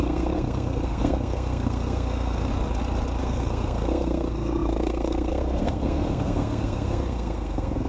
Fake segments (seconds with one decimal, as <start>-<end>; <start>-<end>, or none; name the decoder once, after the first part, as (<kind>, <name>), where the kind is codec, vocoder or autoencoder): 0.0-2.5 (codec, SNAC); 3.2-7.9